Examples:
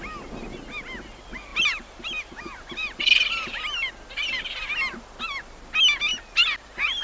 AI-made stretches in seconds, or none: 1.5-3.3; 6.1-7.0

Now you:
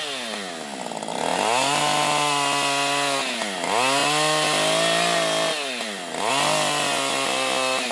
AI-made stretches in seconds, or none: none

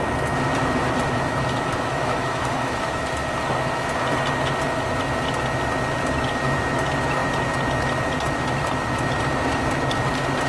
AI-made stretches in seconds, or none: 1.7-3.0

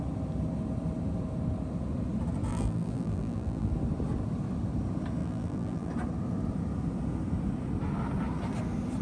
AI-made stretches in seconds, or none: 2.5-3.7; 5.2-5.9

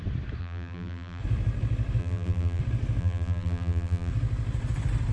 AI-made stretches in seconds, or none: 0.4-1.2; 2.0-2.6; 3.0-4.1

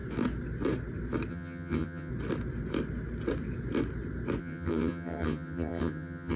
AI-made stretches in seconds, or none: 1.3-2.1; 4.4-6.4